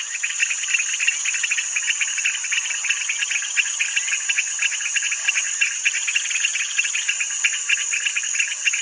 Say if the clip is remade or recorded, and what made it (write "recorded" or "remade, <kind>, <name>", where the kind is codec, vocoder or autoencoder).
recorded